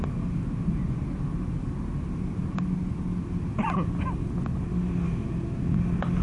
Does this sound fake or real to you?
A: real